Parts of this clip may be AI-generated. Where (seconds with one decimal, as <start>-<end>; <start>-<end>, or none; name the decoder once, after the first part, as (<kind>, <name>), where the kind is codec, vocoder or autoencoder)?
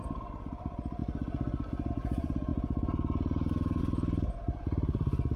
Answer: 0.0-1.0 (vocoder, BigVGAN v2); 1.9-2.5; 3.8-5.4